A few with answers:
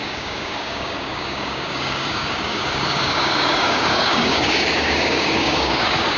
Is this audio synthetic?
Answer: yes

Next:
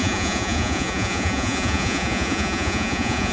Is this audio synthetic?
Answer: yes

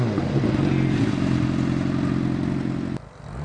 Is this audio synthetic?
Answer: no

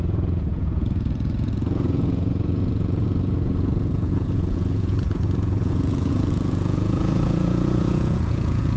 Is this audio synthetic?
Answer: yes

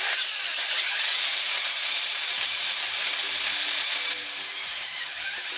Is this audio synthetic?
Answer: yes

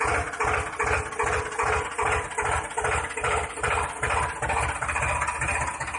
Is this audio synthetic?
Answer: no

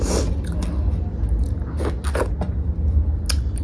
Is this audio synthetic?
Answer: no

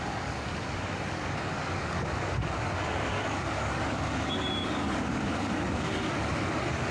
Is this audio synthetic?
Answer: yes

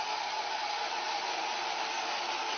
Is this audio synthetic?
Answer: no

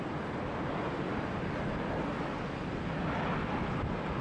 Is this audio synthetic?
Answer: no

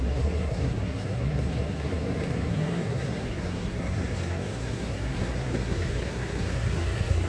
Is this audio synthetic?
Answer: yes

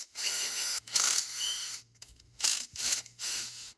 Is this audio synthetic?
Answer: yes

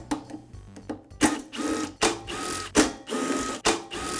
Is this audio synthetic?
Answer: no